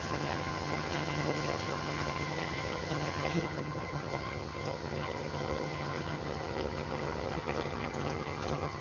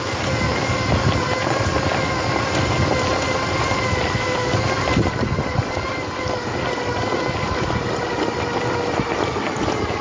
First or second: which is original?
second